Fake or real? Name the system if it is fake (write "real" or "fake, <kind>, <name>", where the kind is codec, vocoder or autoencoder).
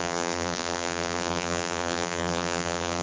fake, vocoder, BigVGAN v2